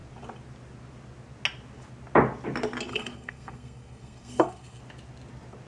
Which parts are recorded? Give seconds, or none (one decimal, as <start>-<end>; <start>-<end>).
0.0-2.9; 4.8-5.7